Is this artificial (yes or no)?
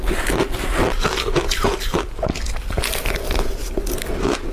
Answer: no